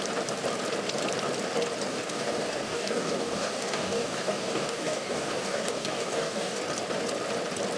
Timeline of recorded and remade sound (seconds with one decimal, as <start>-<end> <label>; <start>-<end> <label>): 0.0-1.9 recorded; 1.9-6.6 remade; 6.6-7.8 recorded